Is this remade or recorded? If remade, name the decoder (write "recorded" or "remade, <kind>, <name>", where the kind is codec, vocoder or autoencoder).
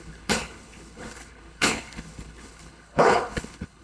remade, codec, HILCodec